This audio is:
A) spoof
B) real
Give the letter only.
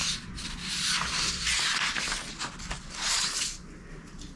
B